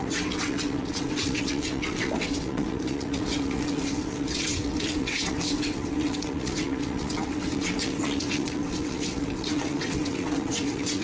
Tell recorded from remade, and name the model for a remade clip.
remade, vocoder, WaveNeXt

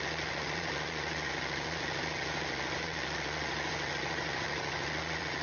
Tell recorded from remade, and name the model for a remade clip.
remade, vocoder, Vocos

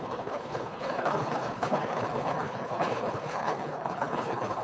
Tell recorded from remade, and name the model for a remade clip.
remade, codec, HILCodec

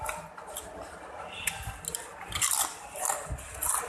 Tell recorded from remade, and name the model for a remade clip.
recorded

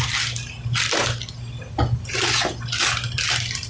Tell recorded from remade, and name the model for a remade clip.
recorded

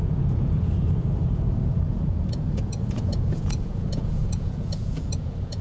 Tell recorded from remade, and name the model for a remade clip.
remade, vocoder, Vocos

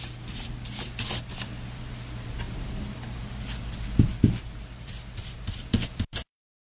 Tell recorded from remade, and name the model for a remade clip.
remade, vocoder, BigVGAN v2